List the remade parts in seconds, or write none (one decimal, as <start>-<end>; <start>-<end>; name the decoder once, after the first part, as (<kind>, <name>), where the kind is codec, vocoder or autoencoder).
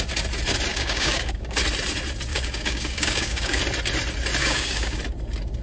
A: 0.7-1.6 (codec, DAC); 2.3-3.6; 4.4-5.0